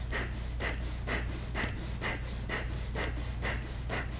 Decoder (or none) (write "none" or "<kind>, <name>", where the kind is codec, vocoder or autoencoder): none